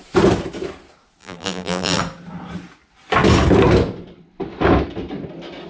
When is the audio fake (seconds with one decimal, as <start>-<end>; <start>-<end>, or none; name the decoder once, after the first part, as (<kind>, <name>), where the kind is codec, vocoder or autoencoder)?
1.2-2.0 (vocoder, BigVGAN v2)